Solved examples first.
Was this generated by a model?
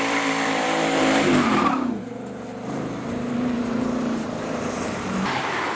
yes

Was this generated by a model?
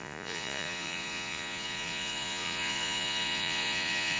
yes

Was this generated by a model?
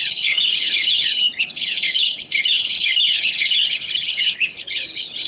yes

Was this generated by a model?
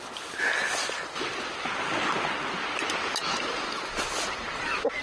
no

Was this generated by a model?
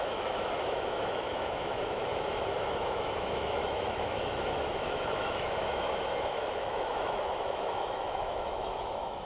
yes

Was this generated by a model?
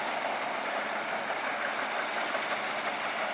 no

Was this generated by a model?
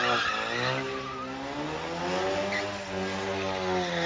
no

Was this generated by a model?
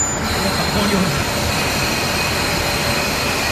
no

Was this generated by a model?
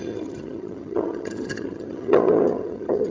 yes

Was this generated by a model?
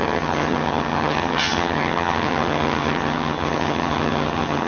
yes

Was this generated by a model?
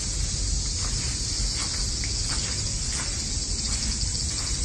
no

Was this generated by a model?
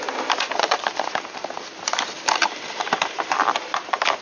no